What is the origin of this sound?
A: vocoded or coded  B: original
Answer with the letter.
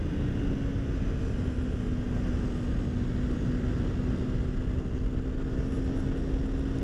B